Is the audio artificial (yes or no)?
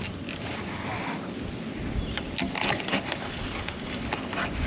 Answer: no